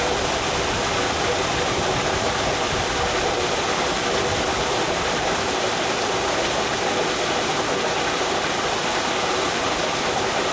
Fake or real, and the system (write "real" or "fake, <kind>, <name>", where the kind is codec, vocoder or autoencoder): real